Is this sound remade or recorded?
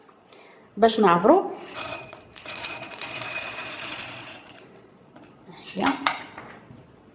remade